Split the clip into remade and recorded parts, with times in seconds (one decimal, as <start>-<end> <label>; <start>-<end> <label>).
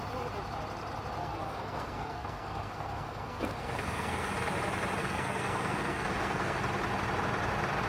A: 0.0-1.2 recorded; 1.2-4.3 remade; 4.3-5.0 recorded; 5.0-6.6 remade; 6.6-7.9 recorded